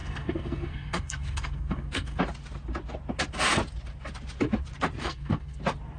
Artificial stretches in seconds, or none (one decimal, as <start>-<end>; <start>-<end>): 0.0-2.2; 5.0-5.6